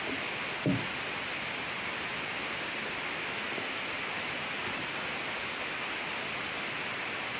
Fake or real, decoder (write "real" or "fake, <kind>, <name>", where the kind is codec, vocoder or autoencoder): real